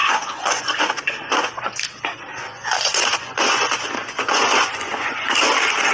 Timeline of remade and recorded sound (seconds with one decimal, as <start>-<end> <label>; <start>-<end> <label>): 0.0-1.8 remade; 1.8-2.4 recorded; 2.4-5.3 remade; 5.3-5.9 recorded